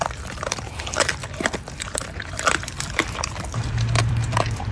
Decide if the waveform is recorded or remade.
remade